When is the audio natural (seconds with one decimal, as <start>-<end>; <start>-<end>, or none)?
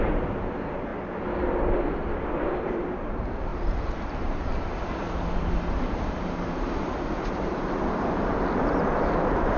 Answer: 0.9-2.4